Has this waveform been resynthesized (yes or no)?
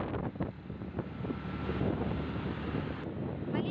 no